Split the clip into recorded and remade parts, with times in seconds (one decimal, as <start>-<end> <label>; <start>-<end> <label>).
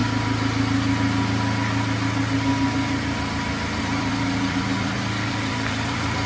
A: 0.0-3.8 recorded; 3.8-6.3 remade